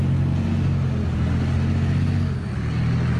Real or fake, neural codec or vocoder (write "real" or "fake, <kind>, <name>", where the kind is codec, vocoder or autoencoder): real